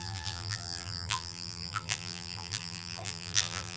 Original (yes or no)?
no